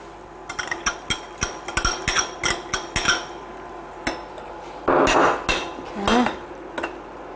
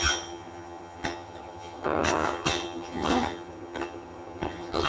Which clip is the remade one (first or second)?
second